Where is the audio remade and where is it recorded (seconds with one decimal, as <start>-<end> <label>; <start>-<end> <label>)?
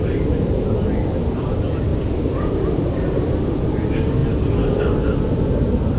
0.0-1.9 recorded; 1.9-3.6 remade; 3.6-6.0 recorded